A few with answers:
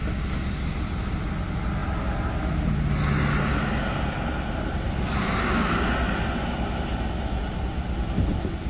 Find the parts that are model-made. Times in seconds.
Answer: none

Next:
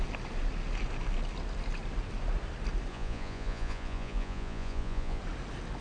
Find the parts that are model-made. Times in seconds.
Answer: 2.9-5.2 (vocoder, Vocos)

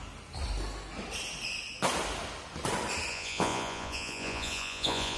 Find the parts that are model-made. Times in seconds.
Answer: 3.1-5.2 (vocoder, Vocos)

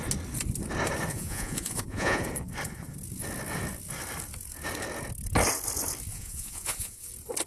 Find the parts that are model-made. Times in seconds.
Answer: 1.1-2.2 (vocoder, Vocos); 6.1-7.1

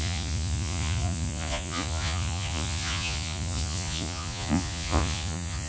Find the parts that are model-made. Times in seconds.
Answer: 0.0-5.7 (vocoder, Vocos)

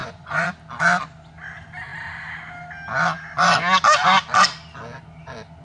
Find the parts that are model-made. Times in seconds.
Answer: 0.0-0.5 (vocoder, Vocos)

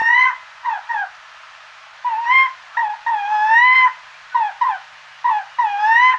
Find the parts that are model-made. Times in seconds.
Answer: 0.0-0.9 (vocoder, Vocos)

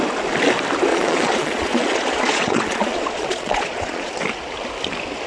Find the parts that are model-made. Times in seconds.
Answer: 0.9-4.1 (vocoder, Vocos)